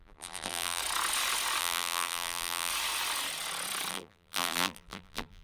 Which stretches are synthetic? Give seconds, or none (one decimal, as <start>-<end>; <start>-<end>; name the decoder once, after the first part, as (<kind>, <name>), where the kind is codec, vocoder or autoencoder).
0.0-0.8 (vocoder, BigVGAN v2); 1.6-2.7; 3.9-5.4